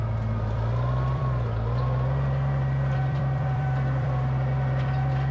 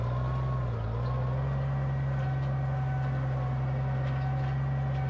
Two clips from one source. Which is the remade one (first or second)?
first